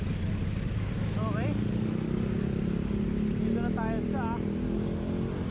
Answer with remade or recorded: recorded